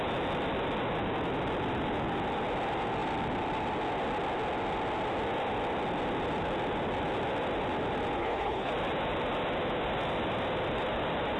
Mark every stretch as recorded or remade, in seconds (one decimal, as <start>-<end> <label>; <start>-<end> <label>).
0.0-8.2 recorded; 8.2-8.7 remade; 8.7-11.4 recorded